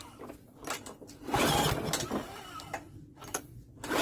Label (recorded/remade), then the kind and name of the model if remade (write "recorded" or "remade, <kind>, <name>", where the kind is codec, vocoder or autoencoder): recorded